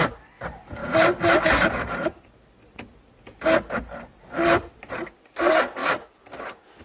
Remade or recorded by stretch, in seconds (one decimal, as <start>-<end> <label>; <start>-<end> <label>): 0.0-6.8 recorded